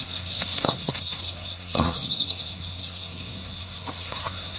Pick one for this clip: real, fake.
fake